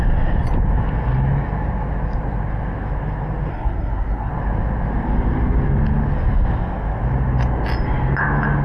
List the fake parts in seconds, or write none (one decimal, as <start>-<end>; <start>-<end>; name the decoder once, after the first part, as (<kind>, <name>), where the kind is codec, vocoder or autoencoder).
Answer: 3.5-4.3 (codec, SNAC)